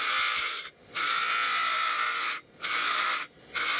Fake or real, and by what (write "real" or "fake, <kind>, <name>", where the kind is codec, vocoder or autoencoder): real